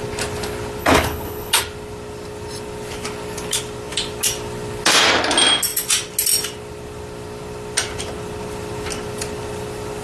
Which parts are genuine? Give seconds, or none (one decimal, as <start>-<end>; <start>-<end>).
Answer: 0.0-0.8; 1.6-10.0